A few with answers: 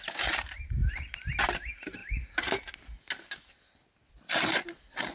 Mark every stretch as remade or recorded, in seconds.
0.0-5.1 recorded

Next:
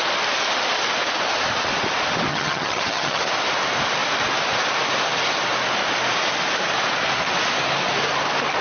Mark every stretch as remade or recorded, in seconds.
0.0-2.3 recorded; 2.3-3.2 remade; 3.2-8.6 recorded

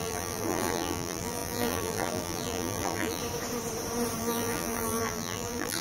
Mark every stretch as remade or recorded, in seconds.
0.0-3.2 remade; 3.2-4.2 recorded; 4.2-5.8 remade

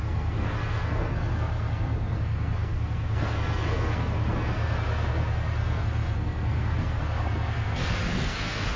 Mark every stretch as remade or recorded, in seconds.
0.0-8.8 remade